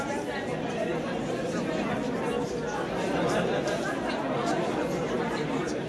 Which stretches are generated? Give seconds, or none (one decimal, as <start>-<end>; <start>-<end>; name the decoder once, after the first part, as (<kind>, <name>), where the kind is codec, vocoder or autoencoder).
none